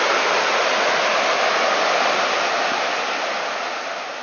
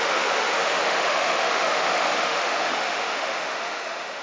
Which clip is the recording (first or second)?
first